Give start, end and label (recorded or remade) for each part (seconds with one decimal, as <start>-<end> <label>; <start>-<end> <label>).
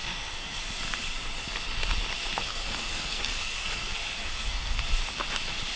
0.0-0.6 remade; 0.6-2.4 recorded; 2.4-4.8 remade; 4.8-5.8 recorded